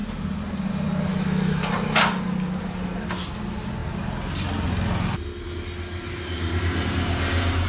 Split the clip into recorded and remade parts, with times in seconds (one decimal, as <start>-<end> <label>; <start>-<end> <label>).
0.0-1.1 recorded; 1.1-1.6 remade; 1.6-7.7 recorded